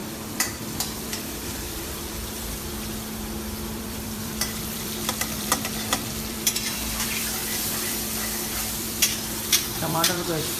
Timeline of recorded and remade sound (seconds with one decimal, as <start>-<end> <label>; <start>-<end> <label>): 0.0-7.4 remade; 7.4-7.9 recorded; 7.9-10.6 remade